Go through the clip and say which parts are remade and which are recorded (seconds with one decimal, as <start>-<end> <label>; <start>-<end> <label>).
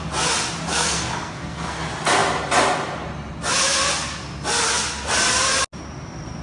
0.0-0.7 recorded; 0.7-1.8 remade; 1.8-6.4 recorded